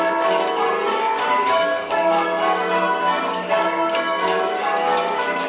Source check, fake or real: fake